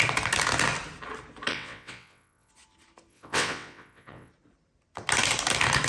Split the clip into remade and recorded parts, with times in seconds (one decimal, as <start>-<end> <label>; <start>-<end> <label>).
0.0-1.5 recorded; 1.5-2.5 remade; 2.5-3.1 recorded; 3.1-4.3 remade; 4.3-5.9 recorded